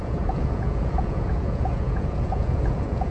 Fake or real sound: fake